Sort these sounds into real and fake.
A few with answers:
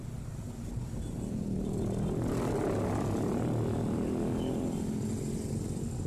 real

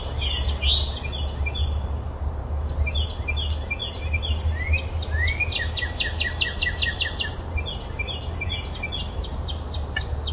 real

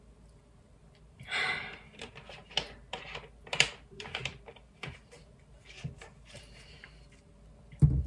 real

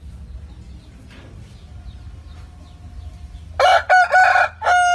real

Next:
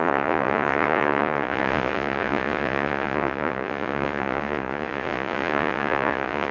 fake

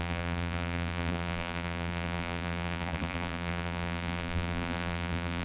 fake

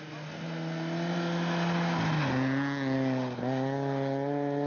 real